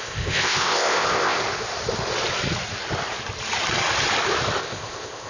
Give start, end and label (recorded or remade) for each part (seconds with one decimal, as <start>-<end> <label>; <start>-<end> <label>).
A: 0.0-1.4 remade; 1.4-4.6 recorded; 4.6-5.3 remade